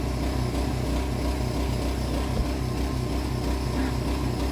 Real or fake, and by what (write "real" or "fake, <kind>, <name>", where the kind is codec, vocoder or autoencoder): real